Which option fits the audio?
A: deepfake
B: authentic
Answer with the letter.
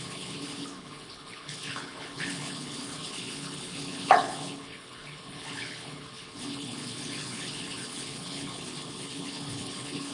A